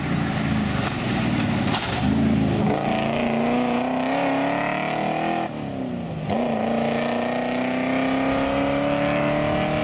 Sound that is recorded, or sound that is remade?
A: recorded